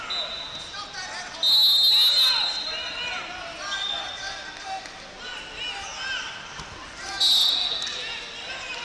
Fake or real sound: real